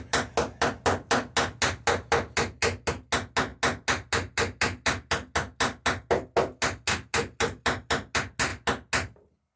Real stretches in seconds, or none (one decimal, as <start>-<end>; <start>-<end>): 0.0-9.6